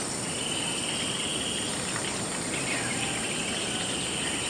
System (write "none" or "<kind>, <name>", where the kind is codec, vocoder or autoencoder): none